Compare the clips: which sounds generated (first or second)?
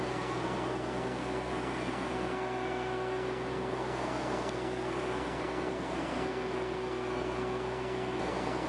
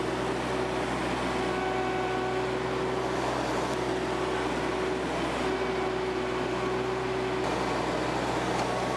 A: first